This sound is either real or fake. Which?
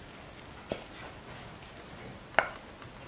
real